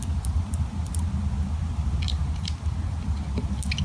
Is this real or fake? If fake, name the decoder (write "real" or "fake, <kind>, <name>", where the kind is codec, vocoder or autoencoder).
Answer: real